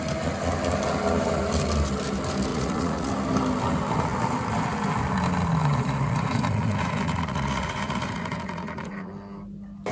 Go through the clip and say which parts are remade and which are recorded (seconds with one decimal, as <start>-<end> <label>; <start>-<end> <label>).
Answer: 0.0-2.5 recorded; 2.5-3.1 remade; 3.1-5.6 recorded; 5.6-9.1 remade; 9.1-9.9 recorded